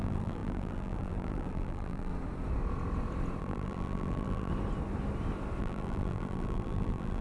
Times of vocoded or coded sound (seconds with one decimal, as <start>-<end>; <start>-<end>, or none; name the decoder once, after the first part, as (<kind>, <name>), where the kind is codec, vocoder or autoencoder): 0.0-2.1 (vocoder, BigVGAN v2); 3.4-4.5; 5.6-7.2